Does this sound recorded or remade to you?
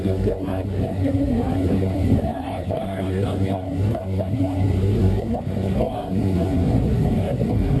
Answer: remade